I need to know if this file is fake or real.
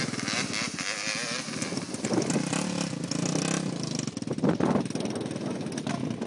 real